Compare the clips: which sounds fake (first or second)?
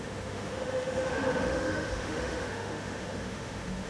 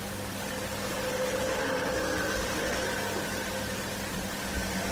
first